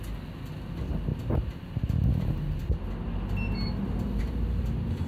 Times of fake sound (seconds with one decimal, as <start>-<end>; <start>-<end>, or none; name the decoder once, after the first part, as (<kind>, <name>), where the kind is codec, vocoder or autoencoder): none